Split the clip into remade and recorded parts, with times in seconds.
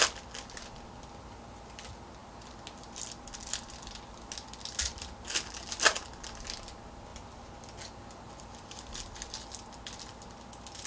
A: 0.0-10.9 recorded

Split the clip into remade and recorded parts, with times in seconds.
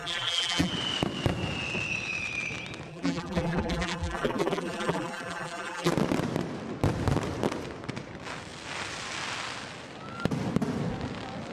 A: 0.0-0.7 remade; 0.7-2.9 recorded; 2.9-5.9 remade; 5.9-11.5 recorded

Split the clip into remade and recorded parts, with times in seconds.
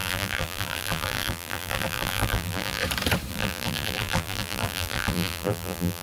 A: 0.0-2.8 remade; 2.8-3.3 recorded; 3.3-6.0 remade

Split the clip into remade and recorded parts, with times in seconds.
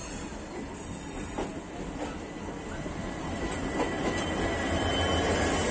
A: 0.0-5.7 recorded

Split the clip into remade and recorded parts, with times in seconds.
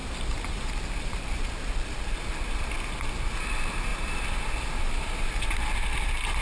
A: 0.0-0.7 remade; 0.7-3.9 recorded; 3.9-5.4 remade; 5.4-6.4 recorded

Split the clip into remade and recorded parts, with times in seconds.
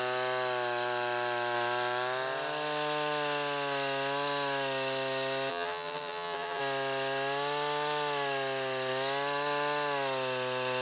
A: 0.0-5.5 recorded; 5.5-6.6 remade; 6.6-10.8 recorded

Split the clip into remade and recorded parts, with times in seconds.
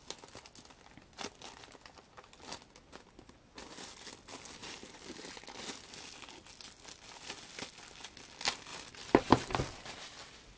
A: 0.0-4.6 recorded; 4.6-5.2 remade; 5.2-8.7 recorded; 8.7-9.6 remade; 9.6-10.6 recorded